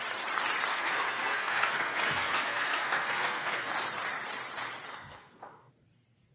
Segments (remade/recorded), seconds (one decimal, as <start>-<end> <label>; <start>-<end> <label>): 0.0-0.7 recorded; 0.7-3.7 remade; 3.7-4.9 recorded; 4.9-5.7 remade; 5.7-6.3 recorded